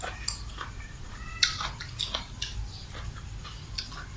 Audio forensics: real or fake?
real